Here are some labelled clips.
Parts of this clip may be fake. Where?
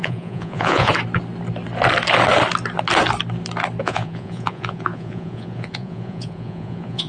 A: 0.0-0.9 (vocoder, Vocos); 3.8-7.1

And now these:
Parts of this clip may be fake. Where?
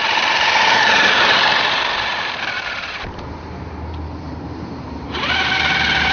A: 0.0-6.1 (vocoder, BigVGAN v2)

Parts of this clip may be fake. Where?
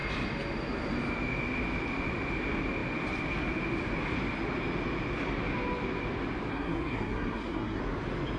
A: 6.5-7.8 (codec, SNAC)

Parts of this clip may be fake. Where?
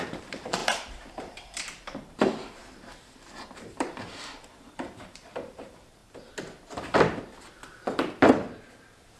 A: 0.0-6.0 (vocoder, BigVGAN v2)